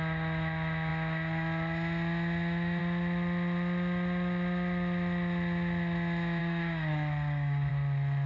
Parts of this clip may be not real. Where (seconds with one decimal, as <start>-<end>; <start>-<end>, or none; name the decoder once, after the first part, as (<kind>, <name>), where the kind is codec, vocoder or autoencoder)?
6.4-7.7 (codec, DAC)